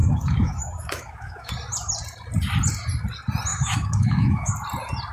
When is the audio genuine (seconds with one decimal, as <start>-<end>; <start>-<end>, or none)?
1.5-3.5; 4.5-5.1